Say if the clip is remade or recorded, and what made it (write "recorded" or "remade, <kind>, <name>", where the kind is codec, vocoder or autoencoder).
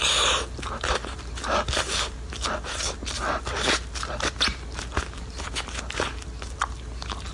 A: recorded